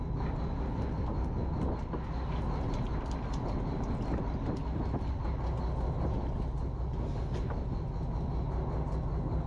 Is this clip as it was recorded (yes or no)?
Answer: yes